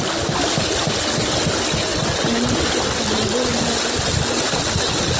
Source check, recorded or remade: recorded